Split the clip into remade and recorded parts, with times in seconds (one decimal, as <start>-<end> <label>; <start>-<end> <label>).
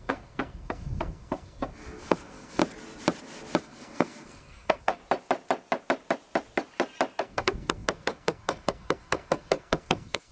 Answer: 0.0-2.6 remade; 2.6-3.6 recorded; 3.6-5.0 remade; 5.0-7.2 recorded; 7.2-10.3 remade